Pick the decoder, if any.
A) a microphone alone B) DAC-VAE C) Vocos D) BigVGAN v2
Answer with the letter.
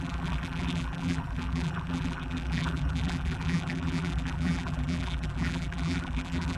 D